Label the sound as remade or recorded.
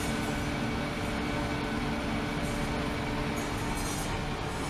recorded